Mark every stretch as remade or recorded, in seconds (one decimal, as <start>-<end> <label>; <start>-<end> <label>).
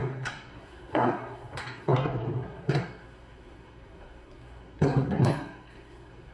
0.0-6.3 remade